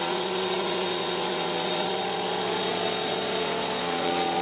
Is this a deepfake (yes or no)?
yes